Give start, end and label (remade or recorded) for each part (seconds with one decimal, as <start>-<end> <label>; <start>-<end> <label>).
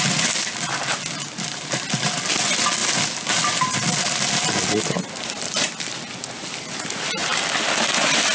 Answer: 0.0-8.3 recorded